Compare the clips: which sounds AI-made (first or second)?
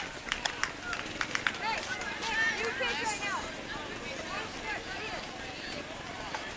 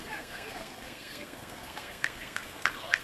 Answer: second